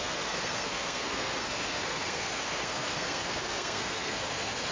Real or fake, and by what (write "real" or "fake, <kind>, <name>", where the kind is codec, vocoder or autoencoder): fake, codec, SNAC